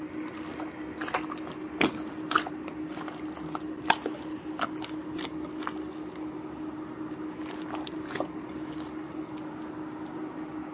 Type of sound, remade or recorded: recorded